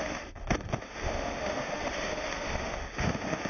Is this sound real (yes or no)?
no